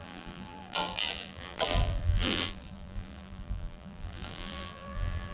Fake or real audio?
fake